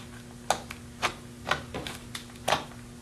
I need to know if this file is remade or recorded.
recorded